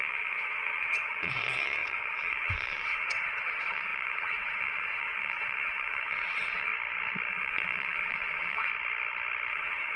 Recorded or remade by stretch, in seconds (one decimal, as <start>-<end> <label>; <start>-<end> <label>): 0.0-6.7 remade; 6.7-7.3 recorded; 7.3-8.7 remade; 8.7-9.5 recorded; 9.5-10.0 remade